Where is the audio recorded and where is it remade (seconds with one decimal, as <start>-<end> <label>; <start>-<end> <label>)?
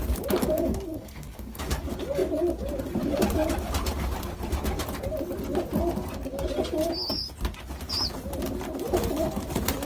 0.0-0.4 recorded; 0.4-1.8 remade; 1.8-9.8 recorded